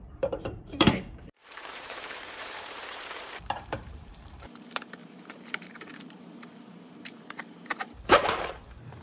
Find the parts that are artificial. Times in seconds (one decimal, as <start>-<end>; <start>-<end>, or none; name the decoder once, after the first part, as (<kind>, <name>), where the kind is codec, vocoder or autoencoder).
0.0-9.0 (vocoder, BigVGAN v2)